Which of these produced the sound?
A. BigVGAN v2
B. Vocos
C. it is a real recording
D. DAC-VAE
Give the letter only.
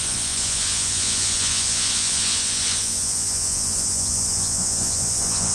B